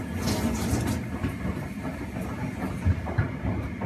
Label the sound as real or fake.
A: real